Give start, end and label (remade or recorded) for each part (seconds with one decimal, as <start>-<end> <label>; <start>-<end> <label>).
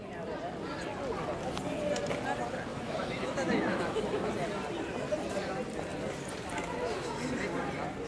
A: 0.0-2.7 recorded; 2.7-4.3 remade; 4.3-8.1 recorded